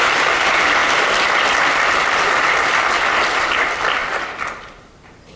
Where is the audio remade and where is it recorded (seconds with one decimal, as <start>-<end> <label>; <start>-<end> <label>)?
0.0-5.4 recorded